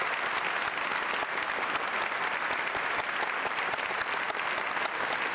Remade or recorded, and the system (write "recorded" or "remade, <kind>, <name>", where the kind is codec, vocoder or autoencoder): recorded